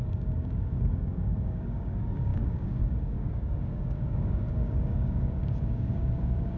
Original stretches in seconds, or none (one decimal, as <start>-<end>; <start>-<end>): none